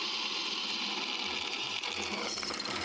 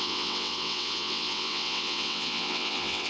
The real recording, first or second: first